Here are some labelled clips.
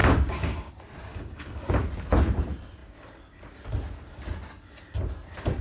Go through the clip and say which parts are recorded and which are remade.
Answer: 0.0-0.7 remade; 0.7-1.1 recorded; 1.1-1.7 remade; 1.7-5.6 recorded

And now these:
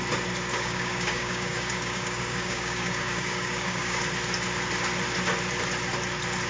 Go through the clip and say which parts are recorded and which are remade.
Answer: 0.0-0.5 recorded; 0.5-4.0 remade; 4.0-6.5 recorded

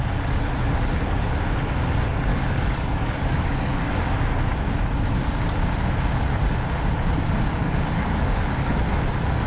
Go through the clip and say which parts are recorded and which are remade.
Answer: 0.0-2.3 recorded; 2.3-3.9 remade; 3.9-7.6 recorded; 7.6-8.9 remade; 8.9-9.5 recorded

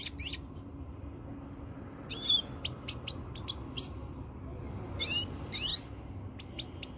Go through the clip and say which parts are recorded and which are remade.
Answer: 0.0-7.0 recorded

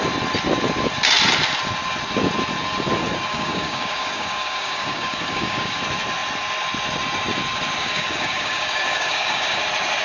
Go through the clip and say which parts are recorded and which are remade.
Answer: 0.0-3.3 recorded; 3.3-5.8 remade; 5.8-7.8 recorded; 7.8-9.6 remade; 9.6-10.0 recorded

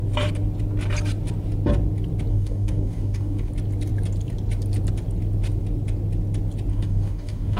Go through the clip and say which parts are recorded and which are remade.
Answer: 0.0-2.3 recorded; 2.3-3.5 remade; 3.5-6.7 recorded; 6.7-7.6 remade

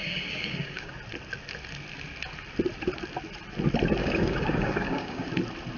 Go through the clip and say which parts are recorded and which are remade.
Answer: 0.0-0.9 remade; 0.9-4.0 recorded; 4.0-5.3 remade; 5.3-5.8 recorded